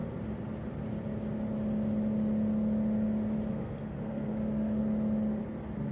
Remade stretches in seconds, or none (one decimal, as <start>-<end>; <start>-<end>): 3.5-4.8